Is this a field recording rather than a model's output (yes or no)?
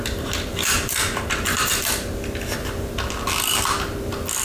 yes